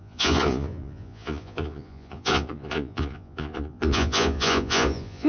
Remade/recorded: remade